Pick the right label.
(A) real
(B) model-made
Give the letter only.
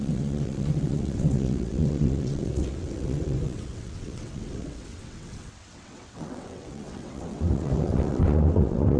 B